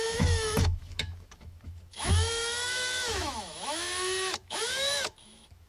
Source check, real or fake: fake